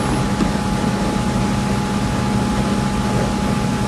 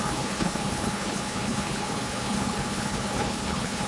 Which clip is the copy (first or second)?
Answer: second